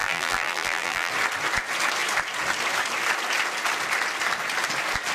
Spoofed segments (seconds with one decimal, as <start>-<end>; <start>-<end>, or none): 0.0-1.1